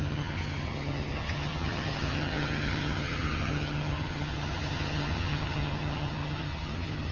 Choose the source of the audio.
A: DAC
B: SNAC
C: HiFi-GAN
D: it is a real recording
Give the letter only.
C